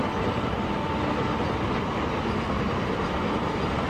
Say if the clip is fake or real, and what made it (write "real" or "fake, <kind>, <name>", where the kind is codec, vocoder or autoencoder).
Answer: real